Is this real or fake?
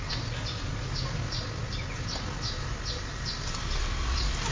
real